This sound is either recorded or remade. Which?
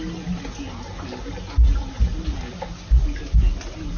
recorded